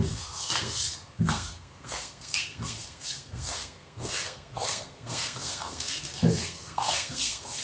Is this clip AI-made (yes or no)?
yes